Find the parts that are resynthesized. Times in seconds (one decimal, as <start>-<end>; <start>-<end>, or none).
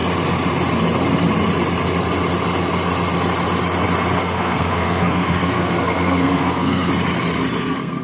4.2-6.9; 7.6-8.0